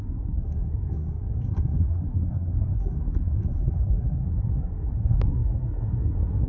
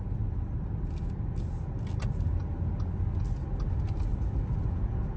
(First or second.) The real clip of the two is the second